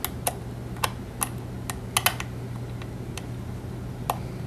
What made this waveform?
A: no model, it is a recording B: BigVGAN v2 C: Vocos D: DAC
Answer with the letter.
A